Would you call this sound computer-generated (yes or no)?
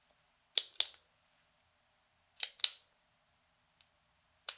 no